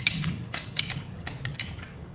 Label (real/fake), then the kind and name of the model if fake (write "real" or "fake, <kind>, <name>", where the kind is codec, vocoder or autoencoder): fake, codec, DAC